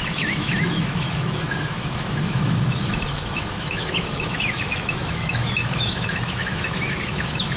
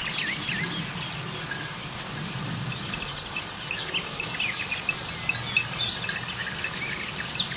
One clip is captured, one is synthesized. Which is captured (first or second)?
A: second